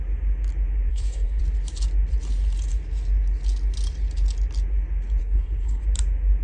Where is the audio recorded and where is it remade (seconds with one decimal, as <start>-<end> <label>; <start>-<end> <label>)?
0.0-0.9 recorded; 0.9-1.4 remade; 1.4-5.2 recorded; 5.2-5.8 remade; 5.8-6.4 recorded